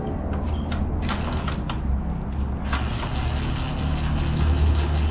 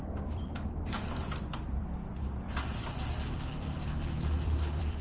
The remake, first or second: second